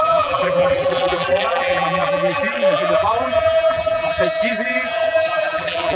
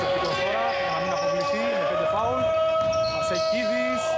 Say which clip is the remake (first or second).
first